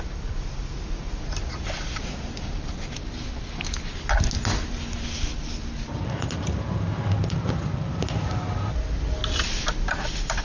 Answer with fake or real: real